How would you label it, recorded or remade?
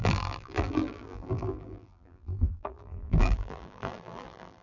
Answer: remade